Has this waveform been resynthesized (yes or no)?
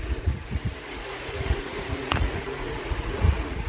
yes